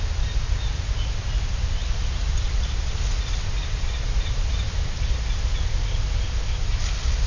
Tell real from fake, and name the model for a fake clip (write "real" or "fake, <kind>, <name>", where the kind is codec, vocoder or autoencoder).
real